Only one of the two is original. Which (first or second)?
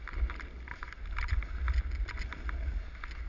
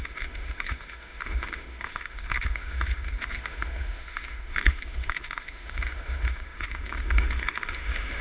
first